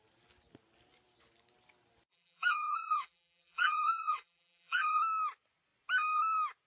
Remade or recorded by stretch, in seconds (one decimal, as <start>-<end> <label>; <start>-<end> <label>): 0.0-2.1 recorded; 2.1-5.0 remade; 5.0-6.7 recorded

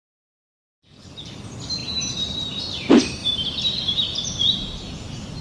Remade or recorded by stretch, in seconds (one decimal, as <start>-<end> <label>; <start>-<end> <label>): 0.0-1.8 recorded; 1.8-2.6 remade; 2.6-3.2 recorded; 3.2-4.6 remade; 4.6-5.4 recorded

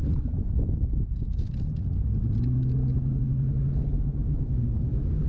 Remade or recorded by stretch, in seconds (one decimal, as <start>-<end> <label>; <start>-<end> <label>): 0.0-3.9 recorded; 3.9-4.5 remade; 4.5-5.3 recorded